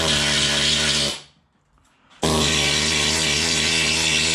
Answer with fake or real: real